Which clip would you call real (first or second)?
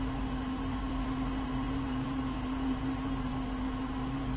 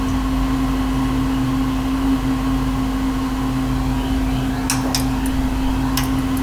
second